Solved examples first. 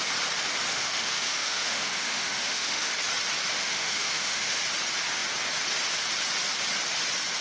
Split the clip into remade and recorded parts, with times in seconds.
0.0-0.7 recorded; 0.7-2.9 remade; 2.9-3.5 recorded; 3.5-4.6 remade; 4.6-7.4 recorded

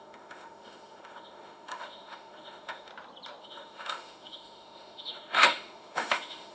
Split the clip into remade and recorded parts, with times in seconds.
0.0-2.9 remade; 2.9-3.4 recorded; 3.4-6.5 remade

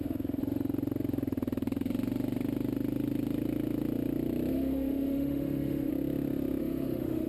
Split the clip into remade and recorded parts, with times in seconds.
0.0-0.4 remade; 0.4-4.5 recorded; 4.5-5.9 remade; 5.9-6.6 recorded; 6.6-7.3 remade

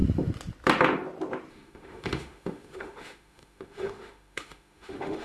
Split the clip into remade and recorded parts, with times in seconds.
0.0-1.5 recorded; 1.5-5.2 remade

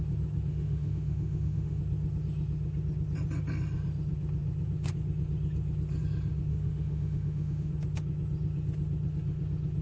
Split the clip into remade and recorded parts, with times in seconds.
0.0-0.5 recorded; 0.5-1.8 remade; 1.8-6.5 recorded; 6.5-7.7 remade; 7.7-9.8 recorded